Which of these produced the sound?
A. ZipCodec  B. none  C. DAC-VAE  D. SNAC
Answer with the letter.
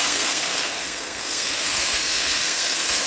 D